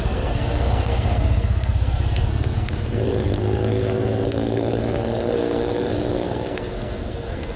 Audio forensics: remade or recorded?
remade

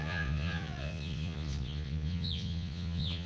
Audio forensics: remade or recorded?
remade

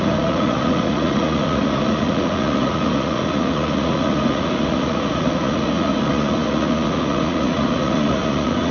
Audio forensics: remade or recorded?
remade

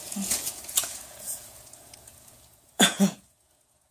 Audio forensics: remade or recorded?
remade